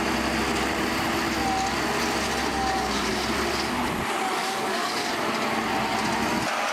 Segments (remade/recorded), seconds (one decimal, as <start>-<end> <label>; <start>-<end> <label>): 0.0-2.5 recorded; 2.5-3.1 remade; 3.1-4.4 recorded; 4.4-5.1 remade; 5.1-6.7 recorded